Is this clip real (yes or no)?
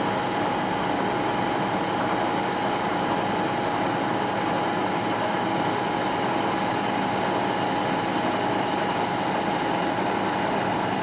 yes